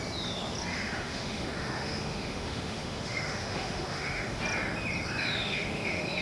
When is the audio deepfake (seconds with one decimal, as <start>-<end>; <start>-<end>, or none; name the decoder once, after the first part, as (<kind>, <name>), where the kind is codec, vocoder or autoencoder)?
0.7-4.4 (autoencoder, DAC-VAE); 5.2-6.2